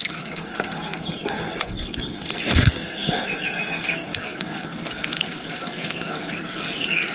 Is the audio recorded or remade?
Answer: remade